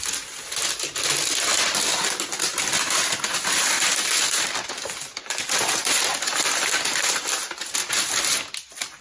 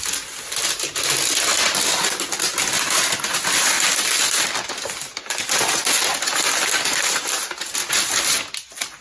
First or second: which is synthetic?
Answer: first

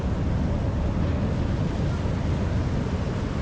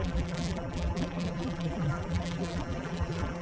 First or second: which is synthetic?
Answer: second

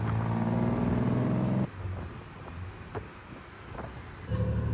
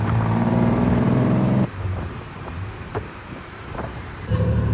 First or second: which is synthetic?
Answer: second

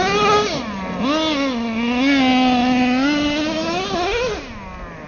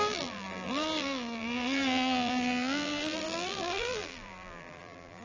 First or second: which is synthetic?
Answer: second